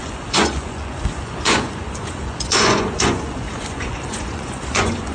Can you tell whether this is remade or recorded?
remade